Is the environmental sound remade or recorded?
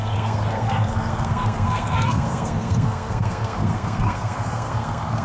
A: remade